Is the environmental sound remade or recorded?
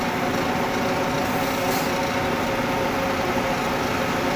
recorded